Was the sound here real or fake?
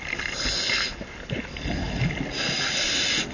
real